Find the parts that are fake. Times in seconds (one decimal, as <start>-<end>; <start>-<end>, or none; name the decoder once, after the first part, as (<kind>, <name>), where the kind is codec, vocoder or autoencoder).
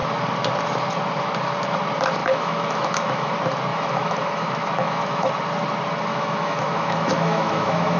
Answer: 2.2-3.3 (autoencoder, DAC-VAE); 3.7-5.3; 6.1-8.0